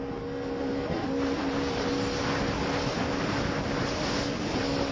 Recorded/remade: recorded